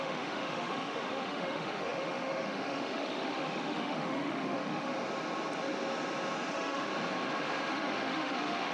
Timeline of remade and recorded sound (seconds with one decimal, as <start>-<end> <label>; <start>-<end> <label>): 0.0-4.9 remade; 4.9-6.5 recorded; 6.5-6.9 remade; 6.9-7.7 recorded; 7.7-8.7 remade